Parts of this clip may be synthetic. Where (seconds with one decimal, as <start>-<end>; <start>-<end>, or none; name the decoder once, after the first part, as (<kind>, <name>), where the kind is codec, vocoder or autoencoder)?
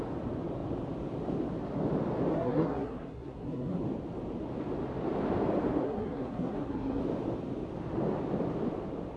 2.3-3.8 (codec, SNAC); 5.8-7.0